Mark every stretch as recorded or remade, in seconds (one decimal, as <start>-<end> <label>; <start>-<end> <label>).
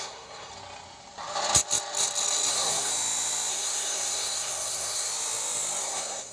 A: 0.0-0.5 remade; 0.5-2.5 recorded; 2.5-2.9 remade; 2.9-3.5 recorded; 3.5-5.1 remade; 5.1-5.8 recorded; 5.8-6.3 remade